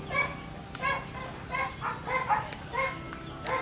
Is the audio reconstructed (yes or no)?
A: no